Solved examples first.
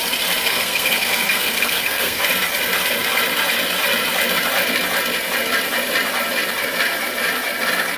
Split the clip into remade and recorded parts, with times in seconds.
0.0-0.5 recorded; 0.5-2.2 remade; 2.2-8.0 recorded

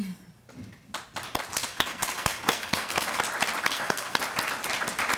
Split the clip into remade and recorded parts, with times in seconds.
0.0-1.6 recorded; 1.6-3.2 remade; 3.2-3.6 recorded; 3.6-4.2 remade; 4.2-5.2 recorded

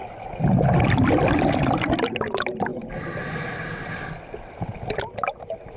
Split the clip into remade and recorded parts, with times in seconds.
0.0-5.8 recorded